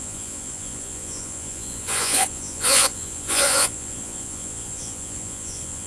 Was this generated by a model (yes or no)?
yes